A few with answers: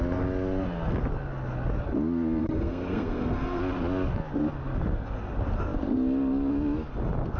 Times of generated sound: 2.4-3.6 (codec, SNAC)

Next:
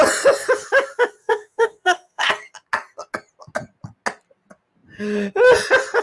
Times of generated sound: 1.2-2.3 (codec, SNAC)

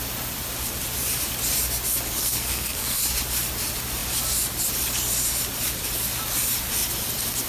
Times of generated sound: 2.2-3.0 (codec, SNAC)

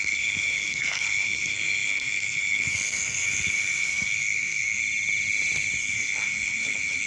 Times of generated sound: 0.0-4.8 (codec, SNAC); 5.8-7.1

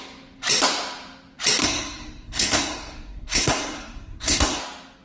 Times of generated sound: 1.6-4.6 (codec, SNAC)